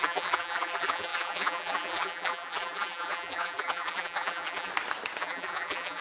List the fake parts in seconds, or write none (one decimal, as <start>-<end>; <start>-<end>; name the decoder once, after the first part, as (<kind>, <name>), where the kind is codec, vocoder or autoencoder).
0.0-4.7 (vocoder, BigVGAN v2); 5.2-6.0